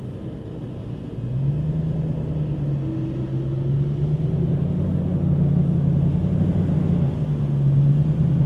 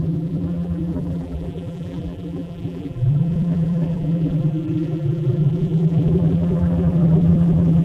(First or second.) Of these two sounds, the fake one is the second